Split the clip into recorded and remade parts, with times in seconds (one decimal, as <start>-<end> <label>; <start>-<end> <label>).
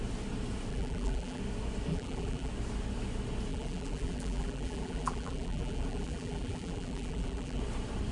0.0-0.7 recorded; 0.7-1.4 remade; 1.4-1.9 recorded; 1.9-2.5 remade; 2.5-3.5 recorded; 3.5-7.6 remade; 7.6-8.1 recorded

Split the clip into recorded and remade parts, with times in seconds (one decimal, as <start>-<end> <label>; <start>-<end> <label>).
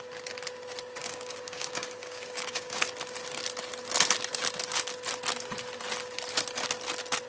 0.0-1.0 recorded; 1.0-2.8 remade; 2.8-7.3 recorded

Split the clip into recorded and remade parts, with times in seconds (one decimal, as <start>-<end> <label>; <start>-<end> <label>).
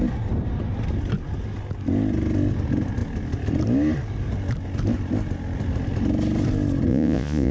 0.0-6.9 recorded; 6.9-7.5 remade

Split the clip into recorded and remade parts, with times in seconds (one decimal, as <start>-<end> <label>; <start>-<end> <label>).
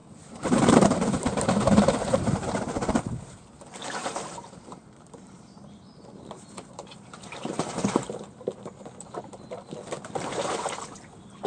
0.0-2.3 remade; 2.3-4.0 recorded; 4.0-8.8 remade; 8.8-11.5 recorded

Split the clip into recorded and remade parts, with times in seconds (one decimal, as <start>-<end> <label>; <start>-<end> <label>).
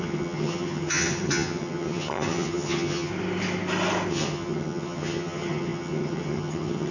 0.0-3.1 remade; 3.1-4.1 recorded; 4.1-6.9 remade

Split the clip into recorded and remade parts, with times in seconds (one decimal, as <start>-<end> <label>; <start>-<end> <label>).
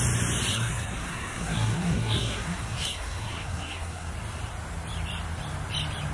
0.0-0.5 recorded; 0.5-4.1 remade; 4.1-6.1 recorded